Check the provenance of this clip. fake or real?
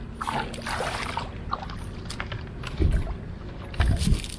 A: real